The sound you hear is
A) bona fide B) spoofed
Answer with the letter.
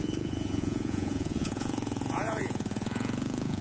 B